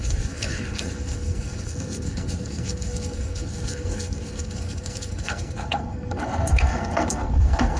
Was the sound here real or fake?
fake